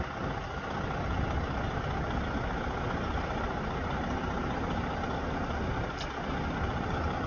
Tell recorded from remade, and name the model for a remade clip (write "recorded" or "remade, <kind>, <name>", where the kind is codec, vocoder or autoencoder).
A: recorded